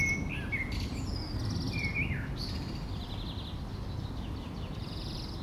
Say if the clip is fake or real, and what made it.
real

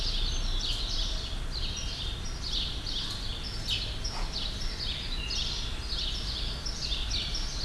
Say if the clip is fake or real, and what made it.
real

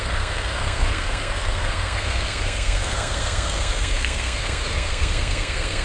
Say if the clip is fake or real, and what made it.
fake, codec, SNAC